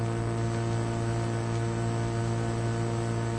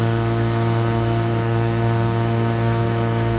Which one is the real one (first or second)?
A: first